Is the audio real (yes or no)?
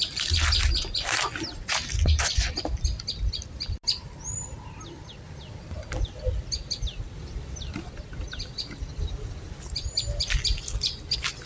yes